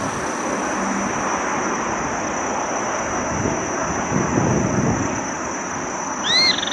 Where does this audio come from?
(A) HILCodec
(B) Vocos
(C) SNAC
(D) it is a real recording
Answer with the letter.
D